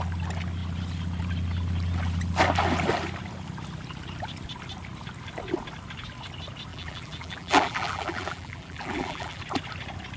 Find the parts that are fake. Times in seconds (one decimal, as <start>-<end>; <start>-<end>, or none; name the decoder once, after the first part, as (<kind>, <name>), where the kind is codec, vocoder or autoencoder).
6.7-9.4 (vocoder, BigVGAN v2)